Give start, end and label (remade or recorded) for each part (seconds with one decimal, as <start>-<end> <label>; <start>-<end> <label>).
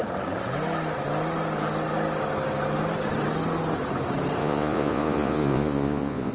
0.0-4.4 recorded; 4.4-6.3 remade